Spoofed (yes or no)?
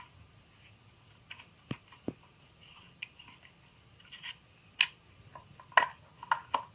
no